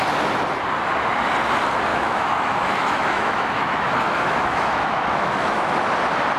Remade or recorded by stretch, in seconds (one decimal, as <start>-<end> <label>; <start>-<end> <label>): 0.0-1.9 recorded; 1.9-5.7 remade; 5.7-6.4 recorded